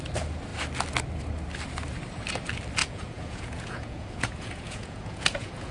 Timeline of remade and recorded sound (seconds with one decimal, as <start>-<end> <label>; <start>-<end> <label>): 0.0-2.8 recorded; 2.8-5.7 remade